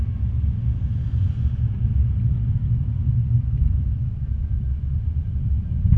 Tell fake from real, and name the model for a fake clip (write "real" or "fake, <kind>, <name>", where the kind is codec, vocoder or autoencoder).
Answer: real